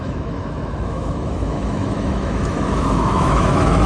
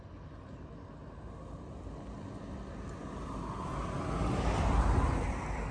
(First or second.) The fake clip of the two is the first